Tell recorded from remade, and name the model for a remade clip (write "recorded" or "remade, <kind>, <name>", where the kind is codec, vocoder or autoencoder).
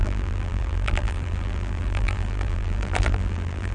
remade, vocoder, BigVGAN v2